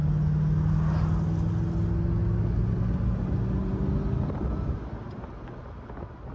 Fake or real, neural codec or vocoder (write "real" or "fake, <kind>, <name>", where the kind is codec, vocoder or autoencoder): real